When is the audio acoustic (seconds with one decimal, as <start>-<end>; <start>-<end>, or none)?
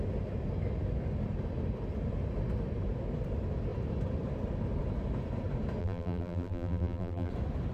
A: 0.0-5.8; 7.3-7.7